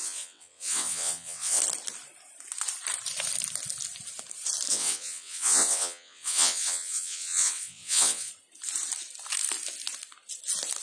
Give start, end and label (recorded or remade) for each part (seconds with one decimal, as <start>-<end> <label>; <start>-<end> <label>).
0.0-1.6 remade; 1.6-4.7 recorded; 4.7-8.3 remade; 8.3-10.8 recorded